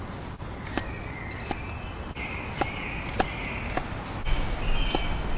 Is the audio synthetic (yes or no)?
no